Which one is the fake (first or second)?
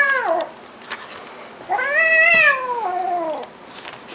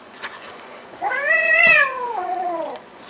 second